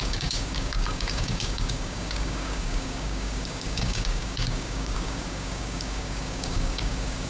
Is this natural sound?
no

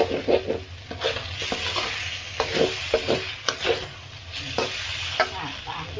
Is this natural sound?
yes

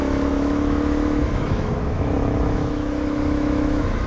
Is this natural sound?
no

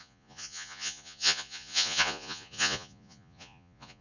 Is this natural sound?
no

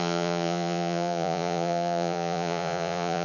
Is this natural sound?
no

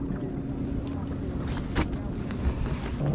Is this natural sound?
yes